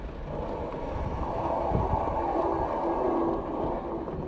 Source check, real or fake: real